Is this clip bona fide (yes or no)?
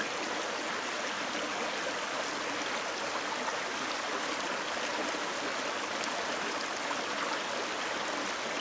yes